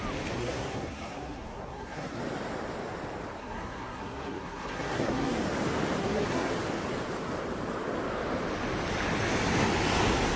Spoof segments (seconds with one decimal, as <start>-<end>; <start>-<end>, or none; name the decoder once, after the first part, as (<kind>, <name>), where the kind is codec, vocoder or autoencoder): 0.4-2.2 (codec, SNAC); 3.4-5.4; 6.0-6.5